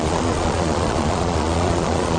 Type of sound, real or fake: fake